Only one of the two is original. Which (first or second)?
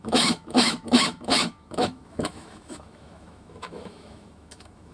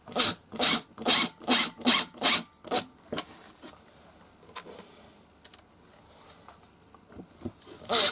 second